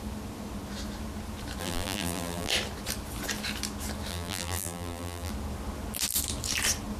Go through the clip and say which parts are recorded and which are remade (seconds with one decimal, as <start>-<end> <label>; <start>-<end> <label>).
0.0-1.6 recorded; 1.6-2.5 remade; 2.5-4.1 recorded; 4.1-5.3 remade; 5.3-7.0 recorded